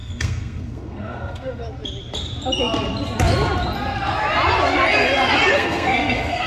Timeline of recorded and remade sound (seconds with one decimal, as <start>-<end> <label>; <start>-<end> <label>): 0.0-1.6 remade; 1.6-5.5 recorded; 5.5-6.5 remade